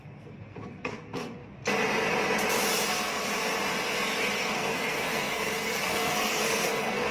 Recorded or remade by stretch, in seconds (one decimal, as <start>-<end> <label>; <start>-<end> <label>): 0.0-1.4 remade; 1.4-2.9 recorded; 2.9-3.3 remade; 3.3-4.4 recorded; 4.4-7.1 remade